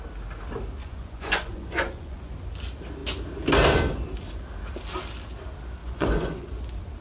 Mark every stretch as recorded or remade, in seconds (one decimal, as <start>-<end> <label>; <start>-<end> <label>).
0.0-0.8 recorded; 0.8-2.3 remade; 2.3-5.8 recorded; 5.8-6.5 remade; 6.5-7.0 recorded